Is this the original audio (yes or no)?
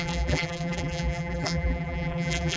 no